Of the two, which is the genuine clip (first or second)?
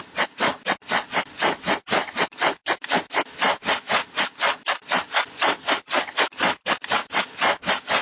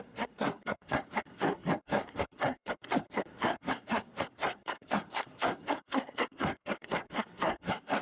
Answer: first